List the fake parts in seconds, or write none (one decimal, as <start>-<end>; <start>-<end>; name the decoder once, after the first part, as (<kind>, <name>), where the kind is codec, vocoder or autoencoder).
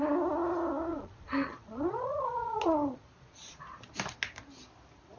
0.9-3.6 (vocoder, Vocos)